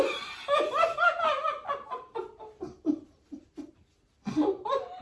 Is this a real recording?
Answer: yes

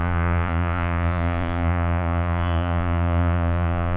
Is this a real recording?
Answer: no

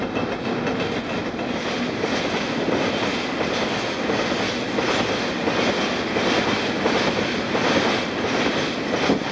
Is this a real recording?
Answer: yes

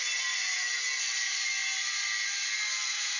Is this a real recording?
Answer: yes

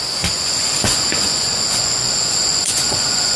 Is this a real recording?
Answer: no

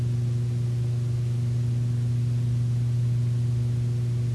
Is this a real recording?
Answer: yes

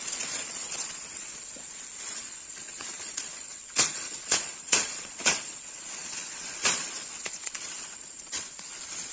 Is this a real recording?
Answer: no